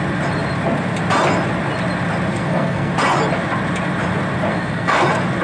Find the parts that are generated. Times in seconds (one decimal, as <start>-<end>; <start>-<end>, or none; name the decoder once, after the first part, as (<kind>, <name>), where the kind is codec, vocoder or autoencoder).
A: 2.3-2.9 (codec, SNAC); 4.5-5.0